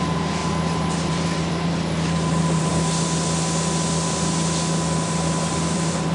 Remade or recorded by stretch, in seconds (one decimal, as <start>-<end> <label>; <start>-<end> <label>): 0.0-2.7 remade; 2.7-5.5 recorded; 5.5-6.1 remade